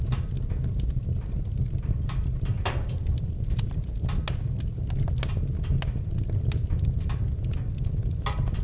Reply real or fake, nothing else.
real